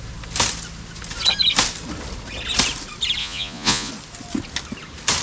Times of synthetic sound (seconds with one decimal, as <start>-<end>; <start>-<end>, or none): 3.2-3.9